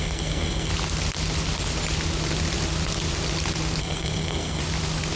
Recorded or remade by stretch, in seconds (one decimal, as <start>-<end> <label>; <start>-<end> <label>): 0.0-0.7 remade; 0.7-3.8 recorded; 3.8-4.6 remade; 4.6-5.2 recorded